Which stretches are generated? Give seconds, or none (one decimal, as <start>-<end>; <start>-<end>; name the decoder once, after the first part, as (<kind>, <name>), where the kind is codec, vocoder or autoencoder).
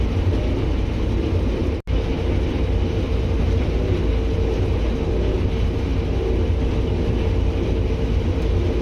none